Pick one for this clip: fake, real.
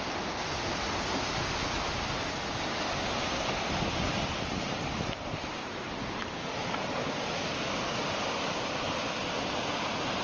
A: real